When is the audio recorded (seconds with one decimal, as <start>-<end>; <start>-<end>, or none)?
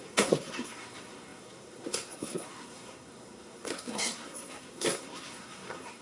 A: none